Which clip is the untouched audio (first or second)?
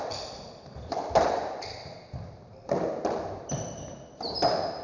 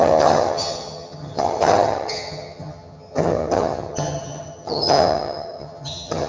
first